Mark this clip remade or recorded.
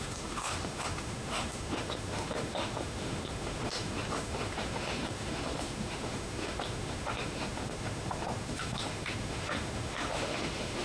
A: remade